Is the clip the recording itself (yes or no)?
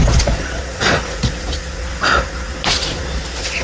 no